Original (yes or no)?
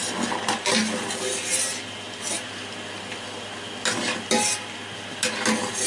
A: yes